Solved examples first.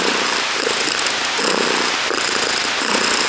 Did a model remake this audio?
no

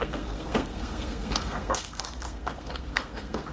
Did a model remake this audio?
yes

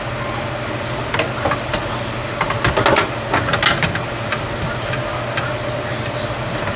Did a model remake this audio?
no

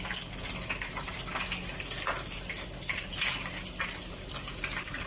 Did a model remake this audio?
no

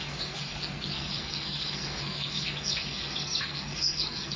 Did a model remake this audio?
yes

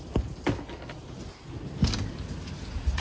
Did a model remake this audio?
no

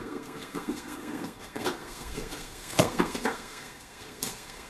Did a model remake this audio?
yes